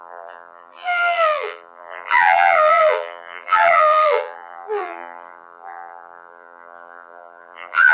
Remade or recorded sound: remade